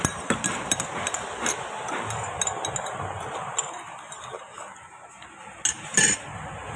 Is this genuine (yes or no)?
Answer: yes